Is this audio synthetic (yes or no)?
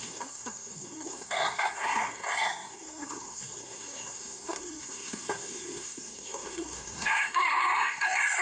yes